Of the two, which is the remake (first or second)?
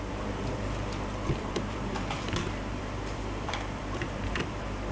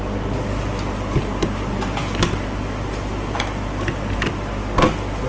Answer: first